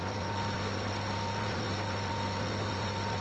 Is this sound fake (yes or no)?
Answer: no